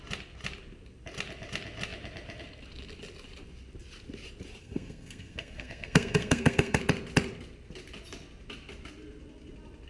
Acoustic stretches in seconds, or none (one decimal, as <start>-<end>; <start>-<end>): 0.0-4.6; 6.8-9.9